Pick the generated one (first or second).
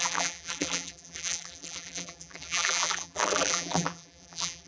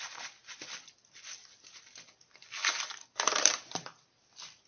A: first